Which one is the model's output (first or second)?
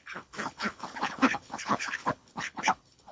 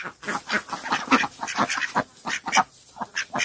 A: first